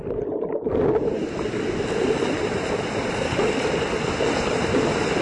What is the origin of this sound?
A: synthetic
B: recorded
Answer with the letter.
B